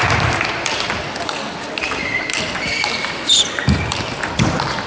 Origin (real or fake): real